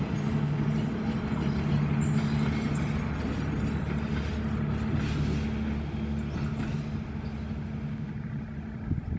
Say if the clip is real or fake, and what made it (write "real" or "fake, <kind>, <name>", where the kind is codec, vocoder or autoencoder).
real